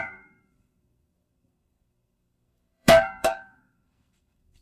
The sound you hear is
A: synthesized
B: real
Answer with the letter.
A